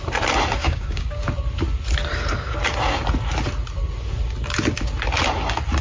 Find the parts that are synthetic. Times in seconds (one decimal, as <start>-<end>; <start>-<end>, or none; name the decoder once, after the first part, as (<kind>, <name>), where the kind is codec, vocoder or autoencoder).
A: 0.6-1.2 (codec, DAC)